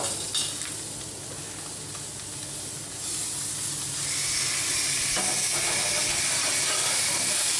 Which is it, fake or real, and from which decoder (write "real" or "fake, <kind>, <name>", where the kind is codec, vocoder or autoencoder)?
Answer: real